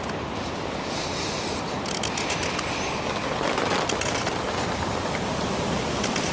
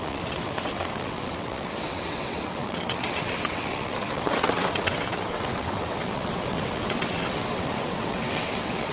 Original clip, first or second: first